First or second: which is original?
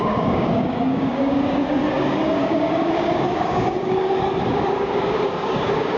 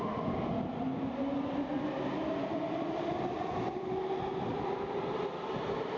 second